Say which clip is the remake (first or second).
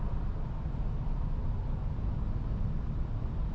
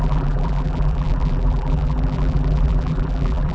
second